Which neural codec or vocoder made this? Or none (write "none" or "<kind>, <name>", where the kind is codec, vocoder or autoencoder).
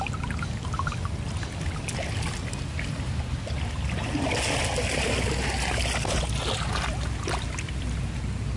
none